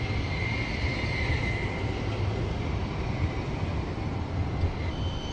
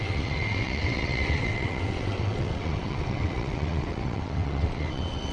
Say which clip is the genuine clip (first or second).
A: first